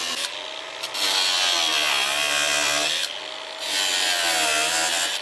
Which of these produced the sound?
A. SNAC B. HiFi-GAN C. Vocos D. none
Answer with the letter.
D